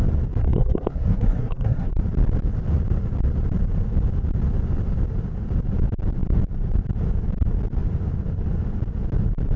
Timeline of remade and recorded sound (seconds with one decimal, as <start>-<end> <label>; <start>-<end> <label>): 0.0-0.4 recorded; 0.4-1.9 remade; 1.9-9.6 recorded